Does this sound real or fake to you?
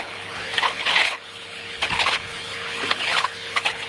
fake